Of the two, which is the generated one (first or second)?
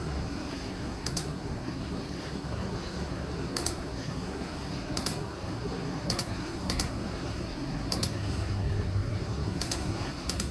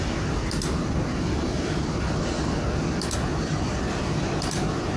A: first